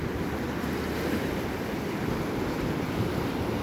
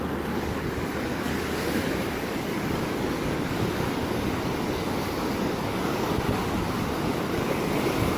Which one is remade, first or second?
second